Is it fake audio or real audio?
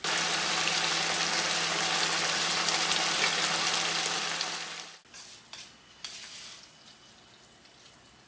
real